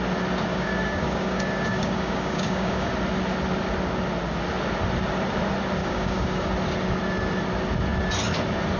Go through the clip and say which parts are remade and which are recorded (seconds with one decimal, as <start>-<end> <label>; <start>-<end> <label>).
0.0-0.5 recorded; 0.5-2.9 remade; 2.9-5.8 recorded; 5.8-6.5 remade; 6.5-8.8 recorded